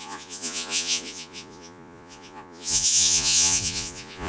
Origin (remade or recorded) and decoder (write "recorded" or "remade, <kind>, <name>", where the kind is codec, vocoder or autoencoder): remade, vocoder, Vocos